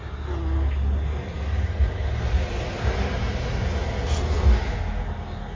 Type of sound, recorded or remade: recorded